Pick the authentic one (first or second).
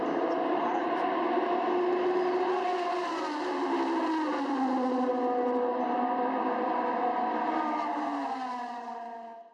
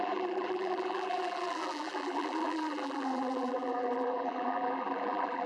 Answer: first